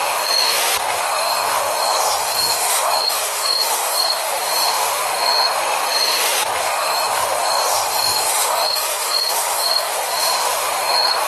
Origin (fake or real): fake